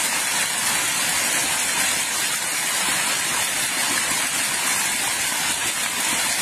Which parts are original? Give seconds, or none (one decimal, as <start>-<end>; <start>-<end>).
0.0-6.4